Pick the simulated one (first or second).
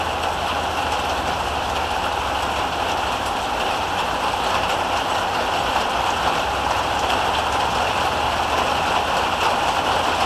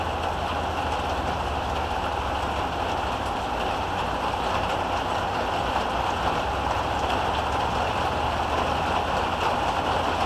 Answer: first